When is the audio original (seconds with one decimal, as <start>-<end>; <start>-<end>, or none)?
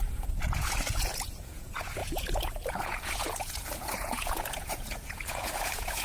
none